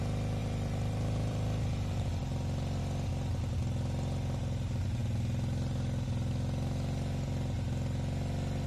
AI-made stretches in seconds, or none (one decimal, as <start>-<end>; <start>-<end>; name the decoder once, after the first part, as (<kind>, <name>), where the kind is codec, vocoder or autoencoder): 0.4-2.8 (vocoder, BigVGAN v2)